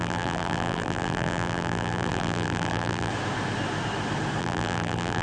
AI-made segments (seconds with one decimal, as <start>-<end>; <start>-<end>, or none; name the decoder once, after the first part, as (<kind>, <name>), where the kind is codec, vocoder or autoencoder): 0.0-3.1 (vocoder, BigVGAN v2); 4.4-5.2